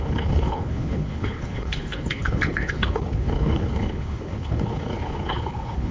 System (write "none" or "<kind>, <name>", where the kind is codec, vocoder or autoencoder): codec, HILCodec